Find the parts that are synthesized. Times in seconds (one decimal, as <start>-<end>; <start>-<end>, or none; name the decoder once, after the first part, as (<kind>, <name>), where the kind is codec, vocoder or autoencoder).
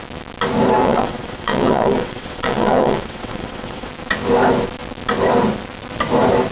0.8-3.9 (vocoder, WaveNeXt)